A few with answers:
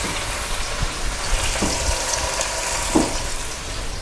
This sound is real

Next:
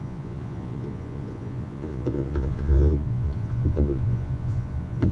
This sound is fake